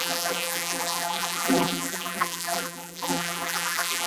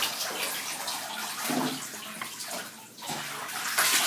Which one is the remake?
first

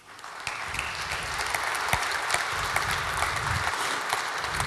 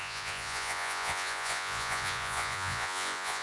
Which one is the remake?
second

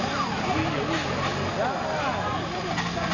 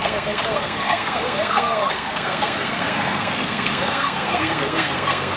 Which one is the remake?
second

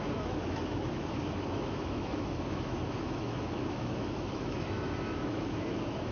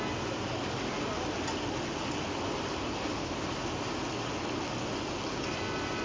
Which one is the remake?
first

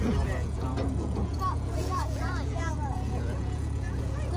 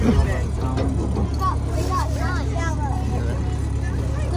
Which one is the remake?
first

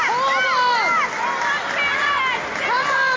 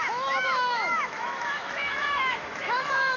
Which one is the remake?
second